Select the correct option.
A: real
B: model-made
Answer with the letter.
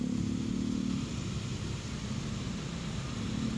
A